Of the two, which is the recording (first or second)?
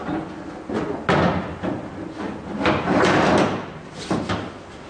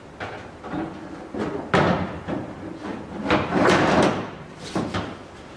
first